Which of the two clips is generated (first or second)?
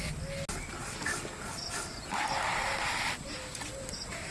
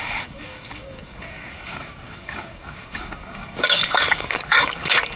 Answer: second